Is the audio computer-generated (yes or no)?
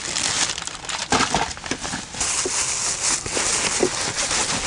no